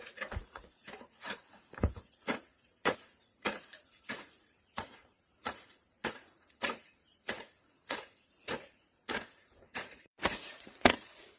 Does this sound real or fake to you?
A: fake